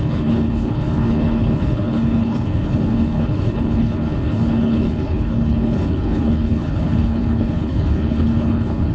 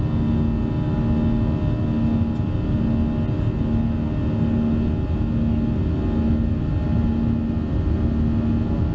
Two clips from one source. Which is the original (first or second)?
second